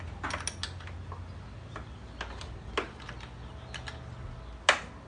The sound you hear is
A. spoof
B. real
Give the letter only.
B